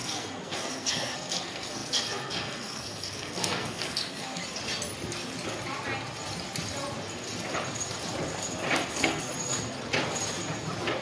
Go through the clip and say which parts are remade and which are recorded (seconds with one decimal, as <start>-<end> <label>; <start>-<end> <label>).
0.0-4.4 remade; 4.4-8.9 recorded; 8.9-9.3 remade; 9.3-11.0 recorded